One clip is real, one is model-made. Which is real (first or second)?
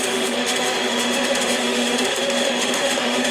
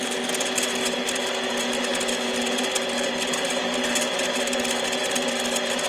second